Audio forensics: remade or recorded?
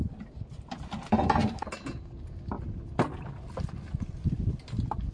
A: recorded